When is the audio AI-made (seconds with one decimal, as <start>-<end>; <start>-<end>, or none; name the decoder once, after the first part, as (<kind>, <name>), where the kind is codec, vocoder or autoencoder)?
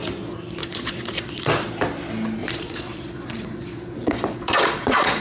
0.6-1.5 (vocoder, Vocos); 2.4-5.2